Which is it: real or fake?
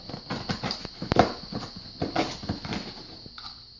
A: real